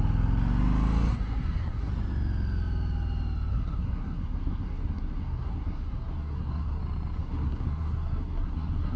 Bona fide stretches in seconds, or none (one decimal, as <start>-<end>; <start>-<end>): 0.0-1.1; 1.9-3.5; 6.8-7.2